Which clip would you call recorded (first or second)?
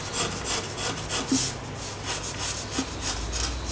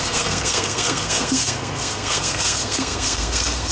first